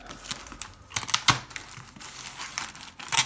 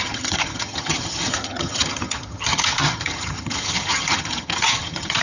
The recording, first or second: first